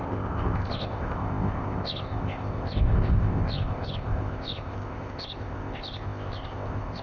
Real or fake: fake